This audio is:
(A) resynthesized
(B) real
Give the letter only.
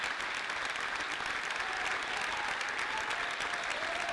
B